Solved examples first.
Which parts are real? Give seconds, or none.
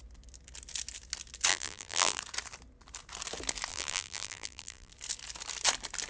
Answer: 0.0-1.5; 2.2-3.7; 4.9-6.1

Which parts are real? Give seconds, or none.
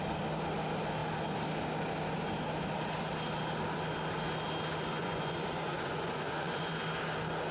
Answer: 0.0-4.9; 6.7-7.5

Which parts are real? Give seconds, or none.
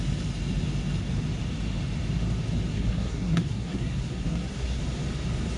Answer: 0.0-2.7; 4.8-5.6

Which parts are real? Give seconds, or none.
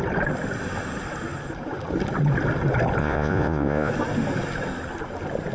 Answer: 0.0-3.0; 3.9-5.5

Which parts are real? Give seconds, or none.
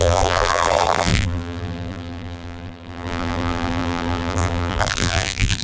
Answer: none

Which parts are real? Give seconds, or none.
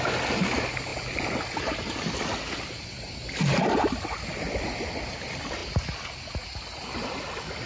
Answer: 0.0-7.7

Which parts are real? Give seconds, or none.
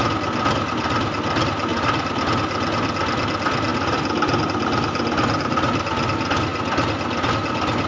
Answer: 0.0-1.7; 2.2-7.9